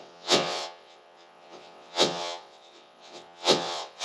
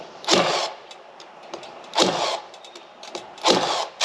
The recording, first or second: second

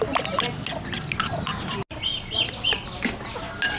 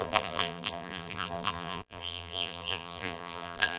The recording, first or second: first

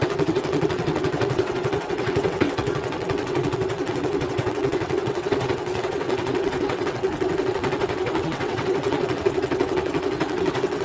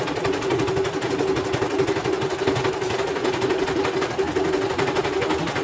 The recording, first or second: second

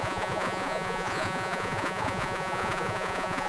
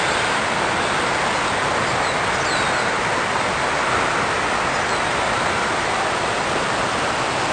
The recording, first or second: second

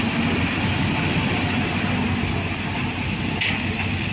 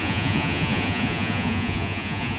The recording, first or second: first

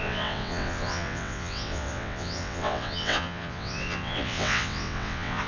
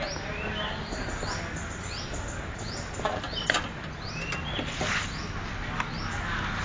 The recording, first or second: second